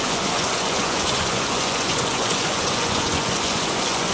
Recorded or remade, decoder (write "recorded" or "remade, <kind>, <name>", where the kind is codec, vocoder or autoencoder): remade, vocoder, Vocos